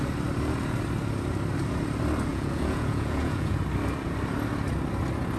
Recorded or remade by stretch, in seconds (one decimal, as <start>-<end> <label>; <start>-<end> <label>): 0.0-2.3 recorded; 2.3-3.6 remade; 3.6-5.4 recorded